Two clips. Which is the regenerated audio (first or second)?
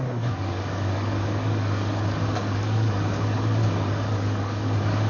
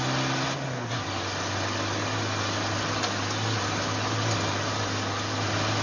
first